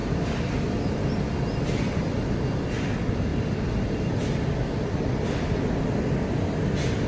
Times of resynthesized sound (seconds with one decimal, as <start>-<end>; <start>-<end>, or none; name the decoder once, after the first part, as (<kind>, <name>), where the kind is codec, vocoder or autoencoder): 0.0-0.9 (vocoder, BigVGAN v2); 3.3-5.8